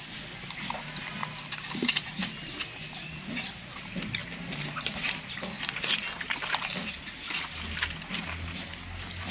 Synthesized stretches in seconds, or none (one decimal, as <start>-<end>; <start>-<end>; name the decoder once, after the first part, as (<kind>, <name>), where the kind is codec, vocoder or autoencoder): none